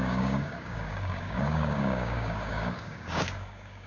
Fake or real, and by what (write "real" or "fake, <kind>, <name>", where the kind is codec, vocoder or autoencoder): fake, codec, DAC